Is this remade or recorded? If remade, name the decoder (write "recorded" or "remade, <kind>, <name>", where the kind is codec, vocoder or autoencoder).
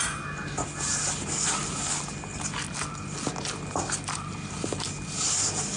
recorded